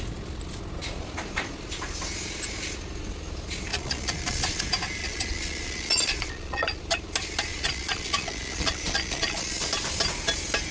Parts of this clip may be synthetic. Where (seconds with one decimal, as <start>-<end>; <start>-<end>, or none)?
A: 3.7-4.6; 5.0-6.8; 7.5-9.7